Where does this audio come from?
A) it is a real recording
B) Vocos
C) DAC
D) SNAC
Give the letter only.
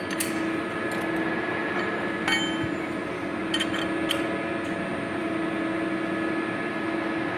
A